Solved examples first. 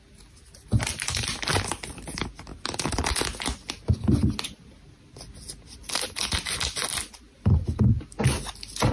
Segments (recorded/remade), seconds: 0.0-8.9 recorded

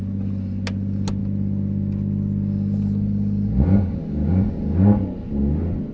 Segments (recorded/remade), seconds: 0.0-5.9 recorded

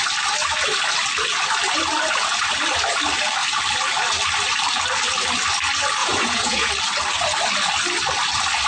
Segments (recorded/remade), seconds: 0.0-6.0 recorded; 6.0-6.7 remade; 6.7-8.7 recorded